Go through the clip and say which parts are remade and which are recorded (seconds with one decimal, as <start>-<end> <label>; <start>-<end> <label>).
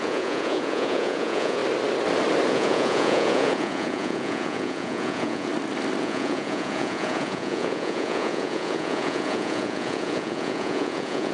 0.0-1.6 remade; 1.6-2.5 recorded; 2.5-5.5 remade; 5.5-6.0 recorded; 6.0-11.3 remade